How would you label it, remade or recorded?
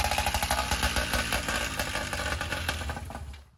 recorded